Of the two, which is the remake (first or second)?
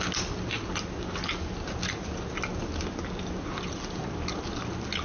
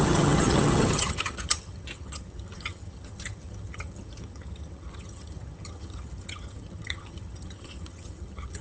second